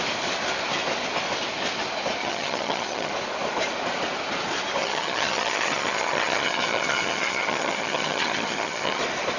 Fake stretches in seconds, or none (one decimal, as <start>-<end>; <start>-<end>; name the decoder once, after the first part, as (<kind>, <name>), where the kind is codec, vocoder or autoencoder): 2.2-3.1 (vocoder, HiFi-GAN); 4.8-9.0